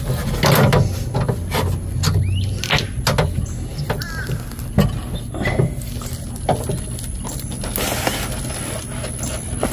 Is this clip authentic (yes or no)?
yes